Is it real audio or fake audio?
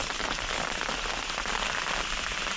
real